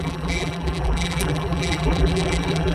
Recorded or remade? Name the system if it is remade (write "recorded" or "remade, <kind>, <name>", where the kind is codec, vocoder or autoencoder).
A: remade, vocoder, BigVGAN v2